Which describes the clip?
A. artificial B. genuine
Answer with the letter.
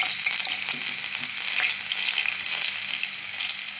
B